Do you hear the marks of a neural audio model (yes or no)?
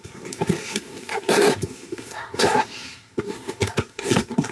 yes